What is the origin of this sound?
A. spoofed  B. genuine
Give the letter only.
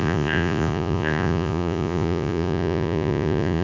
A